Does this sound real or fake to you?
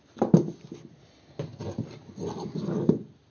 real